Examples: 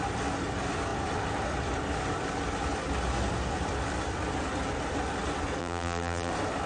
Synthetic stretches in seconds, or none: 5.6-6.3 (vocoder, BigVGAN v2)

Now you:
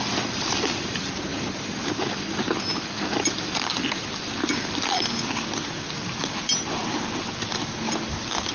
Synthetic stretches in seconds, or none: 1.3-2.0 (vocoder, BigVGAN v2)

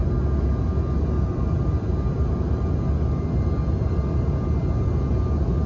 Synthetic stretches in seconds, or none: none

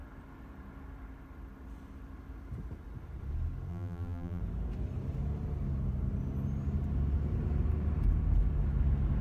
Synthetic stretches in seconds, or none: 3.7-4.4 (vocoder, BigVGAN v2)